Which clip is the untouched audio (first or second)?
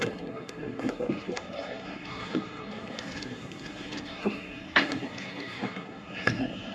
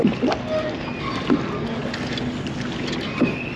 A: second